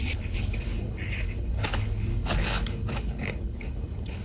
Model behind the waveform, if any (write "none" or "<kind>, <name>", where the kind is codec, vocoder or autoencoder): codec, HILCodec